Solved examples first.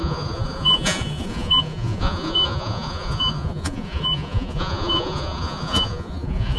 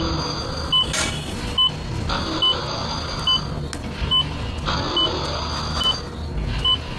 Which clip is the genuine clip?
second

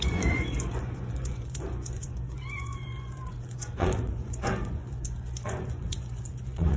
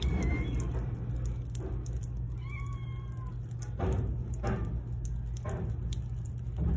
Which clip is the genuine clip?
second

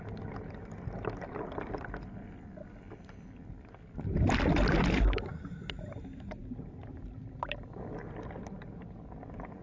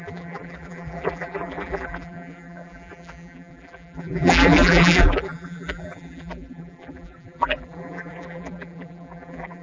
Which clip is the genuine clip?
first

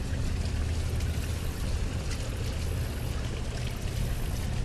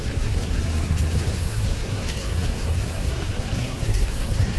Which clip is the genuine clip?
first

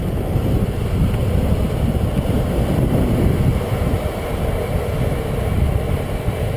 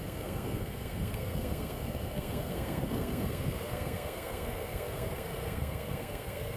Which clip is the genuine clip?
first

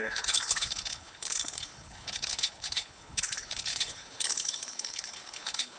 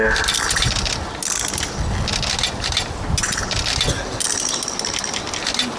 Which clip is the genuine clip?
second